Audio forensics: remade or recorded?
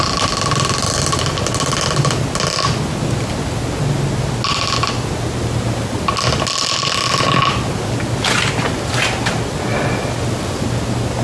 recorded